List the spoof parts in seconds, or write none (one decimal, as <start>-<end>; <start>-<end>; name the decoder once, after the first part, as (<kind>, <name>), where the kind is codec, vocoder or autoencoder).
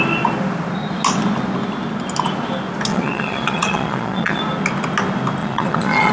2.9-4.4 (vocoder, Vocos); 5.4-6.1